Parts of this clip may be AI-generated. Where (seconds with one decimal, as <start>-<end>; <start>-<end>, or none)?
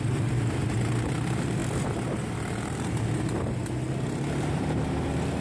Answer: 0.0-3.6; 4.4-5.4